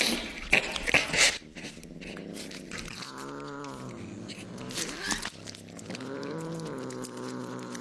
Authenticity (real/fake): real